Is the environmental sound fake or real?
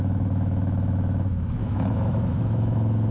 fake